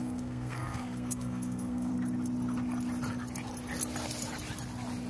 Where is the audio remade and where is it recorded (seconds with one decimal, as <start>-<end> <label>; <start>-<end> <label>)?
0.0-1.9 remade; 1.9-5.1 recorded